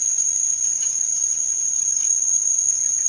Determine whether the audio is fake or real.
real